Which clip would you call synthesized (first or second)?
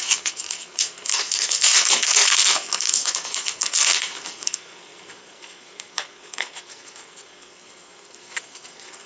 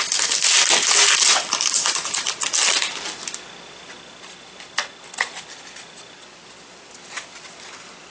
first